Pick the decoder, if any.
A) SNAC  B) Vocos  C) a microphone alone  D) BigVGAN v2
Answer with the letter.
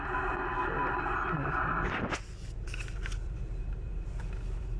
D